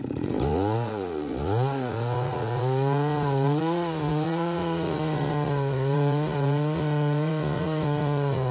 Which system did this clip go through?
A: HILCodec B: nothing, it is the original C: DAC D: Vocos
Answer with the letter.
D